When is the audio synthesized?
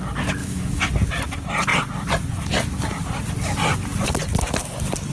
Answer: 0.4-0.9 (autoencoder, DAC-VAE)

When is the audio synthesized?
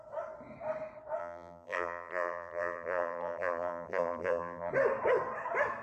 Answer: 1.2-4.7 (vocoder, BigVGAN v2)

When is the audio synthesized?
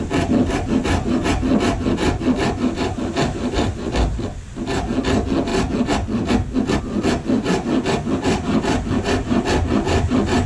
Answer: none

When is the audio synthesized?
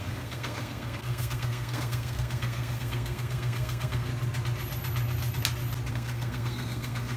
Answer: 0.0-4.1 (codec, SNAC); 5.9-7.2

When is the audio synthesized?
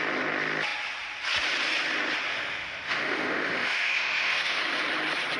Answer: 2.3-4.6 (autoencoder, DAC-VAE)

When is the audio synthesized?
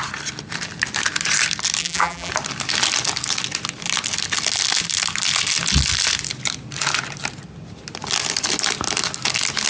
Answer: 1.8-2.3 (vocoder, BigVGAN v2)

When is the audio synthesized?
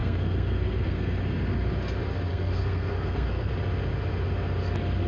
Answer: 0.0-1.2 (codec, SNAC); 2.3-3.5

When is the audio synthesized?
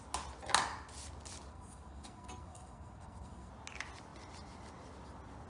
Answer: 1.5-3.5 (codec, SNAC)